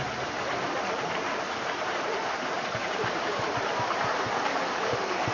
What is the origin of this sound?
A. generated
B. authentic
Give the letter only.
A